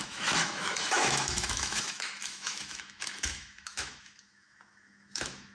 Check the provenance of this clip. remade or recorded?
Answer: remade